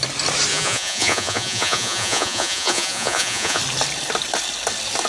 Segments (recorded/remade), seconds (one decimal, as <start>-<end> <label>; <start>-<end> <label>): 0.0-0.5 recorded; 0.5-3.6 remade; 3.6-5.1 recorded